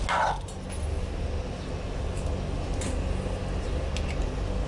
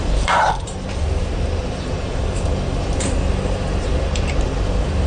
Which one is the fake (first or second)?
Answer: second